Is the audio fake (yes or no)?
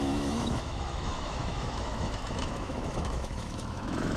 yes